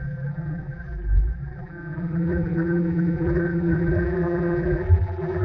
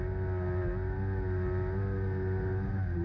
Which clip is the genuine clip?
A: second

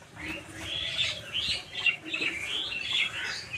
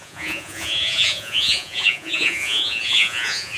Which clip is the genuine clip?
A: first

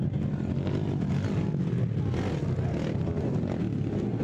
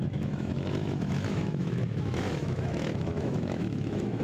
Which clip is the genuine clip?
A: first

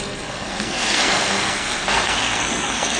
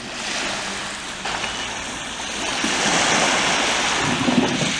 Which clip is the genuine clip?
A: second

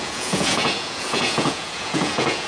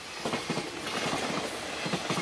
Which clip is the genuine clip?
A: second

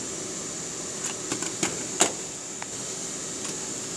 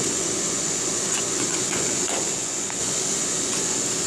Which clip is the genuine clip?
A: first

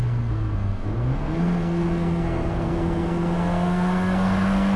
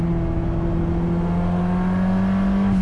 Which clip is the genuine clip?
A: second